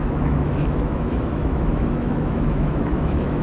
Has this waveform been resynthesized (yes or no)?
yes